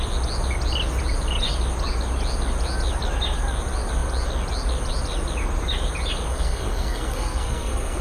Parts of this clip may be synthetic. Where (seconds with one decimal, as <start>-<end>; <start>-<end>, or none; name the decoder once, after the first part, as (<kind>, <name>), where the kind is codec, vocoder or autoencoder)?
6.3-8.0 (codec, SNAC)